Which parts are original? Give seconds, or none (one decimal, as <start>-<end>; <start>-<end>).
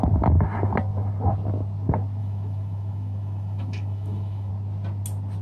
0.0-2.2; 4.5-5.4